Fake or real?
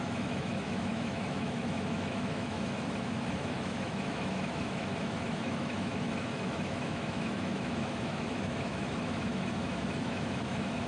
fake